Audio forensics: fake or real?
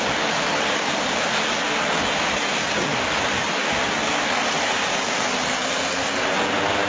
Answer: real